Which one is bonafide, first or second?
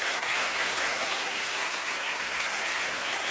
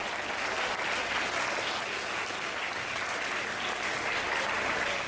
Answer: second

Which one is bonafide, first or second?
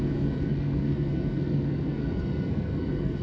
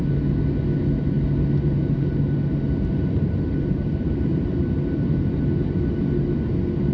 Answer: second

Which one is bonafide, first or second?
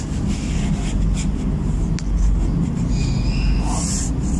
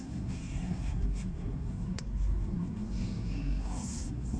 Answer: first